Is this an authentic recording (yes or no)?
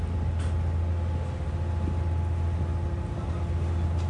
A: yes